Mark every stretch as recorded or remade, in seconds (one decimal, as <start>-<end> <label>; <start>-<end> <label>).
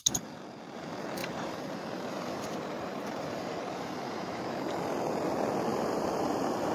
0.0-1.2 recorded; 1.2-4.4 remade; 4.4-5.7 recorded; 5.7-6.7 remade